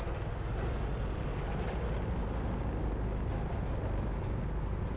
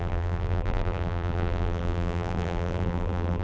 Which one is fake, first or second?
second